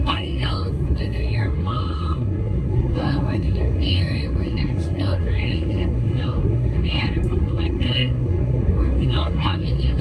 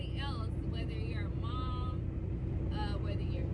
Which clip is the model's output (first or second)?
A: first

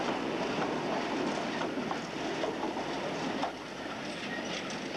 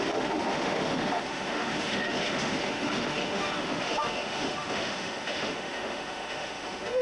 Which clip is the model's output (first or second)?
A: second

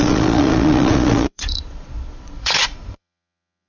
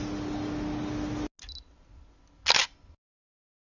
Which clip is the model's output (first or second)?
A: first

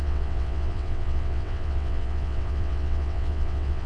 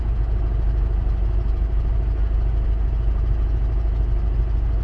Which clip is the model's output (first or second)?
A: first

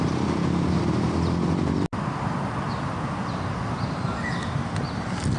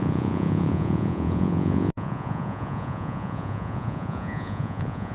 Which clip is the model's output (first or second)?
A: second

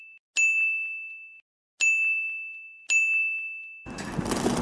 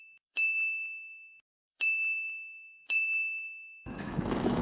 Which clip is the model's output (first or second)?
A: second